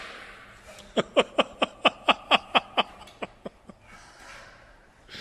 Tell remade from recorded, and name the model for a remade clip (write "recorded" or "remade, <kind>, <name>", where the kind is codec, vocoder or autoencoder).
recorded